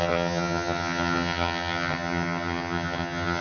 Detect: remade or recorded remade